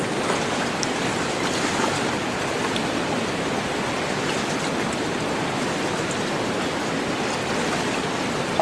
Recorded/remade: recorded